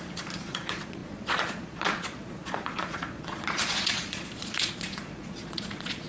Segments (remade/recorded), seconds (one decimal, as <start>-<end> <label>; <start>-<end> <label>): 0.0-6.1 remade